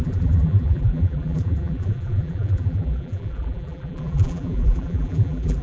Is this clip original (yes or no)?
no